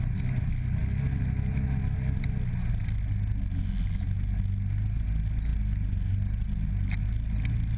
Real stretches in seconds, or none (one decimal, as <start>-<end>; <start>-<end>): 0.0-7.8